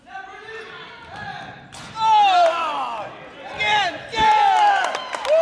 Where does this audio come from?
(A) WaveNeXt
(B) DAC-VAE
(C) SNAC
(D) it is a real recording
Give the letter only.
D